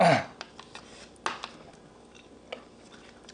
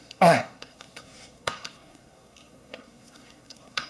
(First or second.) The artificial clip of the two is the second